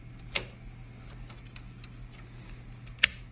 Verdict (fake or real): real